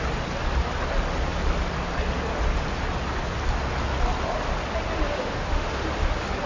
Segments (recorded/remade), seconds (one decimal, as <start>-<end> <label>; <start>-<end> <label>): 0.0-5.1 recorded; 5.1-5.7 remade; 5.7-6.5 recorded